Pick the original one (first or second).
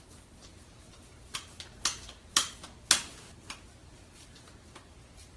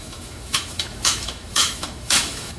first